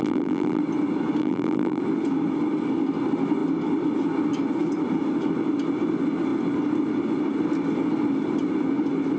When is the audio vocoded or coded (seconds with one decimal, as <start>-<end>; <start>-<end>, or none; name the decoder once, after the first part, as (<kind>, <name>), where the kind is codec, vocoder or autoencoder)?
0.0-0.6 (vocoder, BigVGAN v2); 1.2-1.8